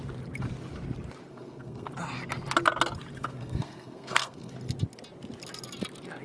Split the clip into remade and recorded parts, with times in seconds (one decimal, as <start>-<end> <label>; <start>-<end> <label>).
0.0-1.3 recorded; 1.3-1.9 remade; 1.9-3.2 recorded; 3.2-4.5 remade; 4.5-6.2 recorded